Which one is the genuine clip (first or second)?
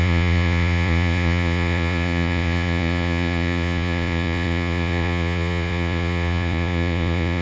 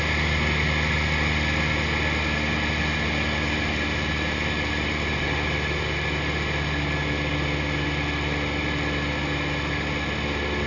second